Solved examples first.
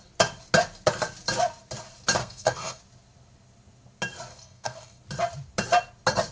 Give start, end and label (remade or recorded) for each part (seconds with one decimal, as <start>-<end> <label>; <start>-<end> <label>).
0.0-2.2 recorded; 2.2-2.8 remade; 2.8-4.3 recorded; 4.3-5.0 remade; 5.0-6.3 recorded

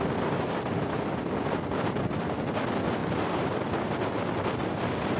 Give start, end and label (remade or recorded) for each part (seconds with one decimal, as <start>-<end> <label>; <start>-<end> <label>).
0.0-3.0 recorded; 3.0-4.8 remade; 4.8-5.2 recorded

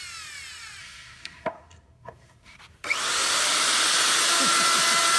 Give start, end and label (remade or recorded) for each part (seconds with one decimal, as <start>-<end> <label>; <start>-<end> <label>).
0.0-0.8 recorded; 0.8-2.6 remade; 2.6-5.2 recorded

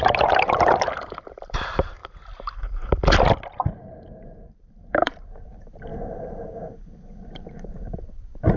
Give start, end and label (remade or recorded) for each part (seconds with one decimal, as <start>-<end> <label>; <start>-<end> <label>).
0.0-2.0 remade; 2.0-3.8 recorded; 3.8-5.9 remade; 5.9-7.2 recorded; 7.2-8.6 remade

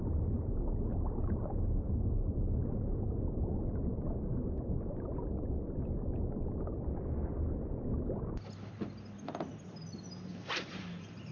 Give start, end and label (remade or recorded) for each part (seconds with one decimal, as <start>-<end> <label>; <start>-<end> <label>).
0.0-0.9 recorded; 0.9-1.4 remade; 1.4-10.3 recorded; 10.3-11.3 remade